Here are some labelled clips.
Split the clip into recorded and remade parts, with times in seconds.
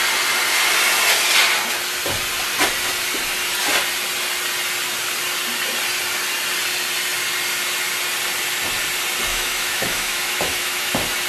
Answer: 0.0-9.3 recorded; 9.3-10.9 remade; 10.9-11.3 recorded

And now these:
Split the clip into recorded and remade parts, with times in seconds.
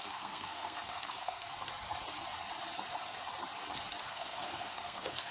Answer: 0.0-1.5 remade; 1.5-4.1 recorded; 4.1-5.3 remade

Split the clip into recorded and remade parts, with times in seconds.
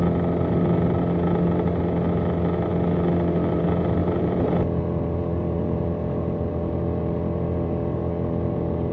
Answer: 0.0-4.0 recorded; 4.0-8.9 remade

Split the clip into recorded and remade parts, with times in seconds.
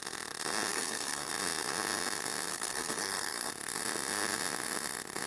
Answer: 0.0-0.7 recorded; 0.7-1.3 remade; 1.3-2.5 recorded; 2.5-3.5 remade; 3.5-5.3 recorded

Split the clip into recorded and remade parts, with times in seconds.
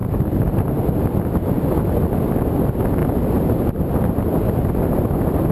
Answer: 0.0-3.0 recorded; 3.0-3.8 remade; 3.8-5.5 recorded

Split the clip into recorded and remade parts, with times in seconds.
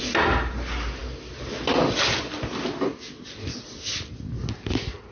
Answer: 0.0-5.1 recorded